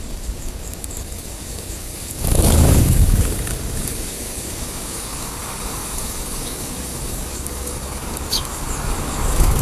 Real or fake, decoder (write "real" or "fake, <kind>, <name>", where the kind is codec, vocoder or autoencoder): fake, codec, DAC